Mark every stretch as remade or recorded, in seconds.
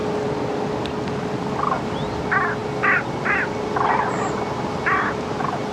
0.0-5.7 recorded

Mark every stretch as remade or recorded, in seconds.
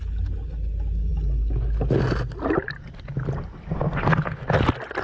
0.0-5.0 recorded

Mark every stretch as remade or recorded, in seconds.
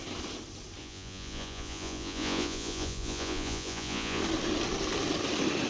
0.0-0.8 recorded; 0.8-4.2 remade; 4.2-5.7 recorded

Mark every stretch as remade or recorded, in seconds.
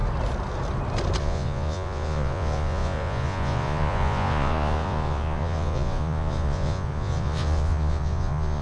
0.0-1.2 recorded; 1.2-8.6 remade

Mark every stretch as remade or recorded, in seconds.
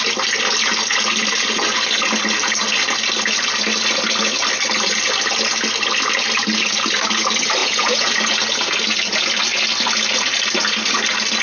0.0-7.6 recorded; 7.6-8.1 remade; 8.1-11.4 recorded